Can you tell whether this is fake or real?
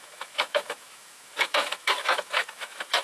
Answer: fake